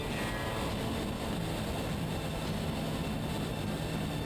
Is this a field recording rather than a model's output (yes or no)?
yes